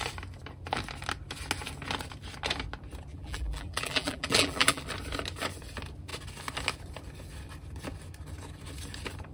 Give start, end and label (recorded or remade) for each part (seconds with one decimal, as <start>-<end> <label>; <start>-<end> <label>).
0.0-3.1 recorded; 3.1-4.8 remade; 4.8-9.3 recorded

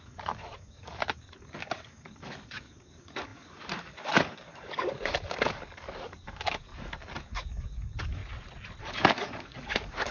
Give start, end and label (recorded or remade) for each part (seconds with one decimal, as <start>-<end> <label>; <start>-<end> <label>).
0.0-8.2 remade; 8.2-8.8 recorded; 8.8-10.1 remade

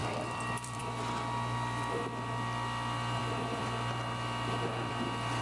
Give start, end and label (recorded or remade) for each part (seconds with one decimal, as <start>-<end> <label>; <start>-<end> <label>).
0.0-0.8 remade; 0.8-3.2 recorded; 3.2-4.9 remade; 4.9-5.4 recorded

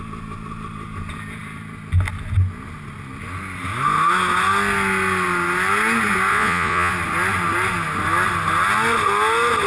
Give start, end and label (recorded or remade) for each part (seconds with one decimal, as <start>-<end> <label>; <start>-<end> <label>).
0.0-6.3 recorded; 6.3-6.9 remade; 6.9-9.7 recorded